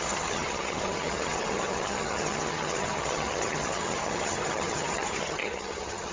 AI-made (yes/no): yes